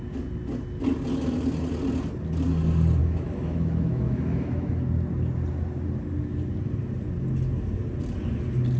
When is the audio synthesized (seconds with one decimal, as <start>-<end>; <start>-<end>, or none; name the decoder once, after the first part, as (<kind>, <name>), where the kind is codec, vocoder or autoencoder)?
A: 3.0-4.7 (autoencoder, DAC-VAE)